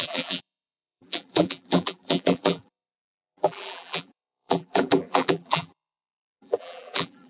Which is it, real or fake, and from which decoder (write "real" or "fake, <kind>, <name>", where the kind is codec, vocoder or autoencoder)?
fake, vocoder, BigVGAN v2